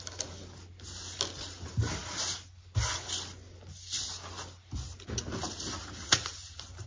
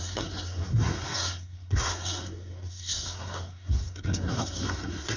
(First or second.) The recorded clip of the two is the first